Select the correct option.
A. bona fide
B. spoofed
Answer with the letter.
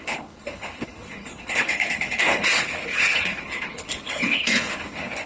B